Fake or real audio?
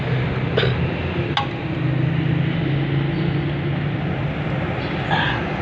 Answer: real